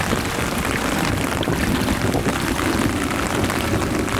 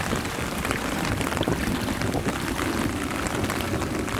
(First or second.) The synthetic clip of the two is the second